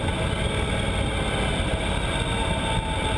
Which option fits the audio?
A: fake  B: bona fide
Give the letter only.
B